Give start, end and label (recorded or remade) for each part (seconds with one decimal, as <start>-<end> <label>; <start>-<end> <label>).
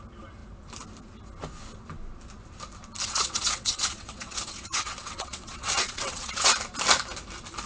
0.0-3.0 recorded; 3.0-6.5 remade; 6.5-7.7 recorded